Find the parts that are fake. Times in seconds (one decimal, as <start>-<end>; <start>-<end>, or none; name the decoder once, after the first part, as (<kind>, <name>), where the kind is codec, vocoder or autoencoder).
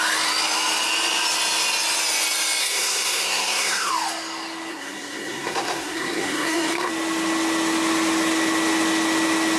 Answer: 2.6-3.9 (codec, SNAC); 4.7-6.9